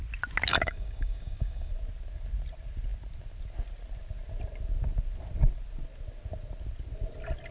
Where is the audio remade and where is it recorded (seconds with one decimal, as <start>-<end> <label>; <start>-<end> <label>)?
0.0-0.5 recorded; 0.5-1.7 remade; 1.7-7.5 recorded